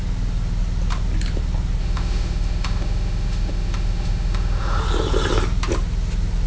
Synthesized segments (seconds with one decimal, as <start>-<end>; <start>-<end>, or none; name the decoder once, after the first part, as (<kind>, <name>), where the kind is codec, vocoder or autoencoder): 1.8-4.8 (autoencoder, DAC-VAE)